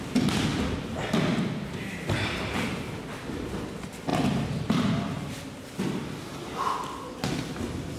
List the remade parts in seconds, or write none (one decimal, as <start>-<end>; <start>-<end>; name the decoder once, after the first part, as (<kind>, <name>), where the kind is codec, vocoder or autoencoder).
0.5-1.1 (vocoder, BigVGAN v2); 4.1-5.4